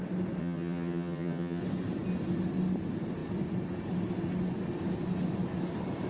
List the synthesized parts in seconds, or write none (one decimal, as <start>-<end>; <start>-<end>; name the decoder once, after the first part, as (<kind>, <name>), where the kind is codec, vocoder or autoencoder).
0.4-1.6 (vocoder, HiFi-GAN)